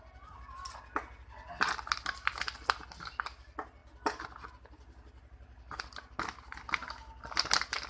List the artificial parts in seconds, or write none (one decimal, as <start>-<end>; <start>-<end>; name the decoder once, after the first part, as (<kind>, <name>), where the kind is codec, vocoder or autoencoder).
none